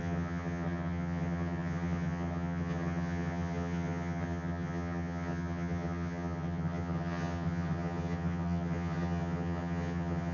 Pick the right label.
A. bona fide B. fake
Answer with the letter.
B